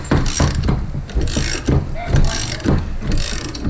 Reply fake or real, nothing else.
real